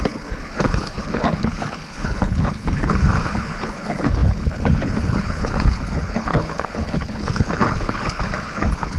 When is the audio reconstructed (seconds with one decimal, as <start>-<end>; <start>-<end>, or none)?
0.0-9.0

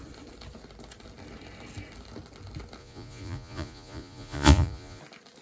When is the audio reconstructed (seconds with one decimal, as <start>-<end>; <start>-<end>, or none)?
2.8-5.0